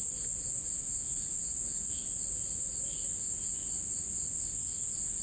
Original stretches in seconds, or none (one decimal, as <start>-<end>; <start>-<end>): 0.0-5.2